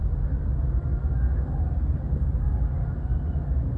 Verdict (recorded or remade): recorded